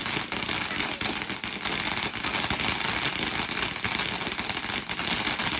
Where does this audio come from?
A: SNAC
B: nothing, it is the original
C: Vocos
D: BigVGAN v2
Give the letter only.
B